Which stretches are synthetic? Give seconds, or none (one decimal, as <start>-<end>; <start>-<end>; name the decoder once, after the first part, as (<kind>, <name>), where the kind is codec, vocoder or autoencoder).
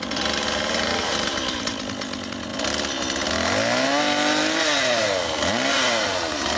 none